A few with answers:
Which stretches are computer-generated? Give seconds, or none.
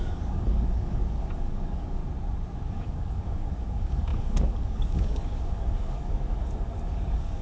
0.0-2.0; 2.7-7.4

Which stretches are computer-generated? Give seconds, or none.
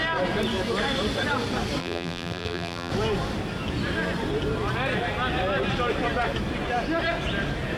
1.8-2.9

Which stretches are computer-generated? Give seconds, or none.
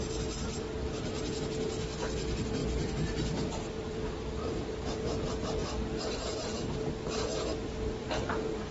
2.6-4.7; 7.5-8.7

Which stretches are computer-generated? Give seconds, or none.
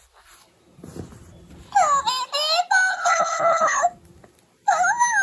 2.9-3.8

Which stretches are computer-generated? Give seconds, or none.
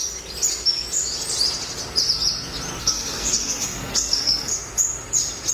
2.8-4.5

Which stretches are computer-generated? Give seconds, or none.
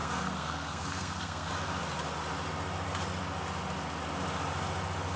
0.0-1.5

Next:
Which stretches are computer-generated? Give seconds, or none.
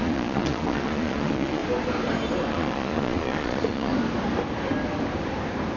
0.0-1.6; 2.5-3.9